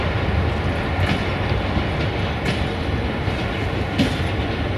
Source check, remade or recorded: recorded